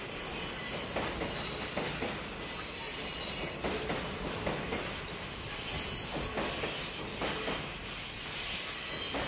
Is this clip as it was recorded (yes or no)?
yes